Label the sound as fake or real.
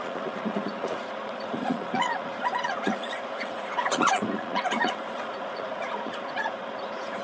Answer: fake